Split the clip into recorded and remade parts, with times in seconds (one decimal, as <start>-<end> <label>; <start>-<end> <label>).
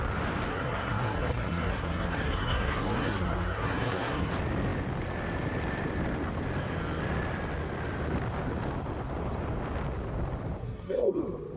0.0-0.5 recorded; 0.5-4.3 remade; 4.3-10.6 recorded; 10.6-11.2 remade; 11.2-11.6 recorded